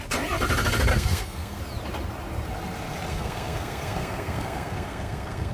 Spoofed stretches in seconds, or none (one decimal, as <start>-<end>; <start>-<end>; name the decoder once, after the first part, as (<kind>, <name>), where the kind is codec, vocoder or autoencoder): 0.9-1.6 (codec, SNAC); 3.1-5.5